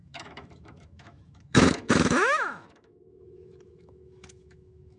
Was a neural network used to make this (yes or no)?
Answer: yes